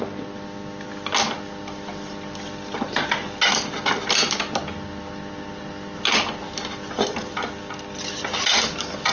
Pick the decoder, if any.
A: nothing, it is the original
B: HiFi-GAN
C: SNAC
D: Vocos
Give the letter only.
A